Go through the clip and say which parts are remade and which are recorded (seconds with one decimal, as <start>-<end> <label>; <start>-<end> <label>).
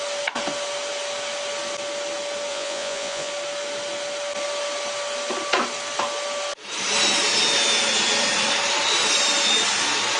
0.0-2.5 recorded; 2.5-3.3 remade; 3.3-10.2 recorded